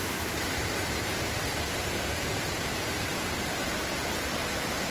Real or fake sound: fake